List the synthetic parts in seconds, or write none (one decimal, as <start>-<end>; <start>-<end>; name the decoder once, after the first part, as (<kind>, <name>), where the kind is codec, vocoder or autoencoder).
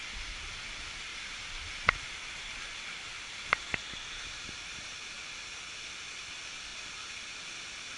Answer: 1.1-5.9 (vocoder, BigVGAN v2)